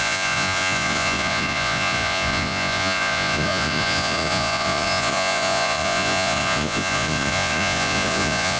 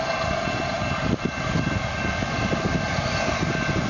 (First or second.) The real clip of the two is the second